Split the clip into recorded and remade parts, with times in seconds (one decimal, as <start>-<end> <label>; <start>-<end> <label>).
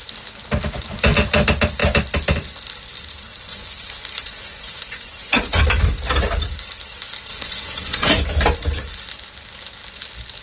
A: 0.0-3.5 recorded; 3.5-5.6 remade; 5.6-7.3 recorded; 7.3-8.1 remade; 8.1-10.4 recorded